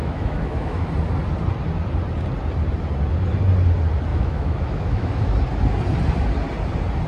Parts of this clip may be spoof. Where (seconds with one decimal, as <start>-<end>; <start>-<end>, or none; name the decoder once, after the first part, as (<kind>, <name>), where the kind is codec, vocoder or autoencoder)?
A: 0.0-0.9 (autoencoder, DAC-VAE); 4.1-5.3